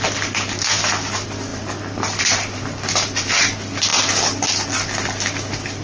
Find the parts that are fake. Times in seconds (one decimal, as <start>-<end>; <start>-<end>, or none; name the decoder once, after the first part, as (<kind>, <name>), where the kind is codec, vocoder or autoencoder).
none